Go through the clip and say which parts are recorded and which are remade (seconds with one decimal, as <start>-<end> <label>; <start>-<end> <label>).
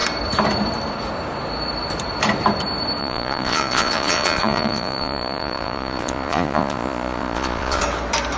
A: 0.0-3.0 recorded; 3.0-7.8 remade; 7.8-8.4 recorded